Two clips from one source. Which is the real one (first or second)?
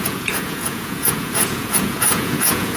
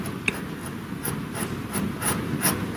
second